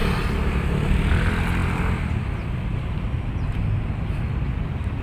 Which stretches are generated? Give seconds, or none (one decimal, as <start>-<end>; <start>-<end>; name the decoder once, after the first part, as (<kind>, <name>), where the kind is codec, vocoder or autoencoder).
2.7-3.9 (vocoder, BigVGAN v2)